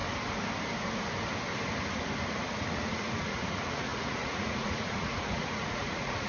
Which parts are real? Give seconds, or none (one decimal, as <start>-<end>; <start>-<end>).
0.0-2.5

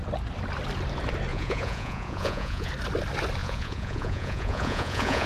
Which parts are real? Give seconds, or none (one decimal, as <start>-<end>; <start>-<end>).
0.0-1.3; 2.7-3.4

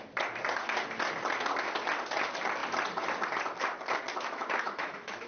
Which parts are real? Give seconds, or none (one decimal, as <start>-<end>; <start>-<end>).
0.0-4.1

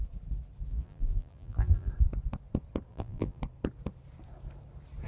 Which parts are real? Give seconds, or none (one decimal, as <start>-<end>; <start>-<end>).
0.0-0.7; 1.9-2.9; 3.4-5.1

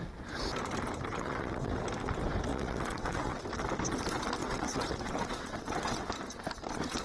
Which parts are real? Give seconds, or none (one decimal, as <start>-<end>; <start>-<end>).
0.0-1.0; 1.8-2.5; 3.4-4.4; 6.1-7.0

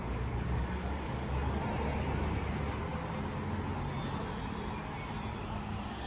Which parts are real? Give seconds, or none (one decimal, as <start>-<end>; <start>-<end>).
1.6-5.3

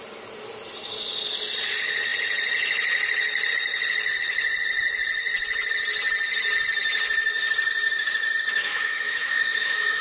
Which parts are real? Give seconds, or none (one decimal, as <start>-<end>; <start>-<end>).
0.0-8.5

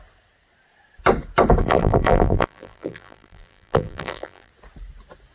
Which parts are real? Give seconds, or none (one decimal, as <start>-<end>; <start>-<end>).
0.0-1.6; 4.5-5.3